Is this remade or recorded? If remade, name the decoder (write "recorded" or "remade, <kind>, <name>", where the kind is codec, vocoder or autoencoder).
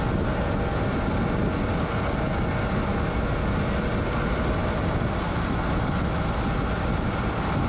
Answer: recorded